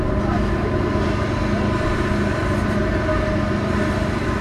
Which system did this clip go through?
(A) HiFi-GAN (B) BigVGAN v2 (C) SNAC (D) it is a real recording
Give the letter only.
D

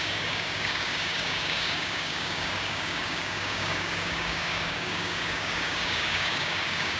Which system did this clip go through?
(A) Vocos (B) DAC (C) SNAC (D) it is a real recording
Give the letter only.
B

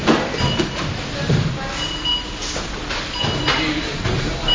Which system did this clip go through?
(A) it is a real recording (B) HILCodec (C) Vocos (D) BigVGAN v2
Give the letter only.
A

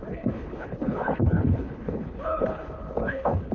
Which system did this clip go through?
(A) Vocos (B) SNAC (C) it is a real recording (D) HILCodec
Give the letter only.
D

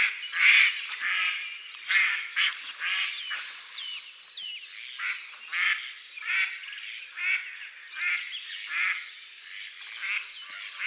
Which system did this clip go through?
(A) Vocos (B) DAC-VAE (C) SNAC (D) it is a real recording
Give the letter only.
D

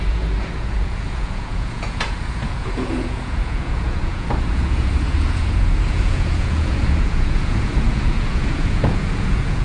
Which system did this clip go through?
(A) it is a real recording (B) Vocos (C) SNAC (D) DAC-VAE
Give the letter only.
B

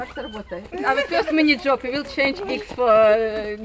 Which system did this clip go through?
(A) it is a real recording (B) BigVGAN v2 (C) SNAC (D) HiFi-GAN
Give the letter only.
A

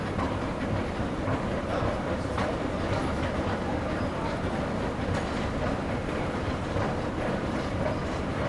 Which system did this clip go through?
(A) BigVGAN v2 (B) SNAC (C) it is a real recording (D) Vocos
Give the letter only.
A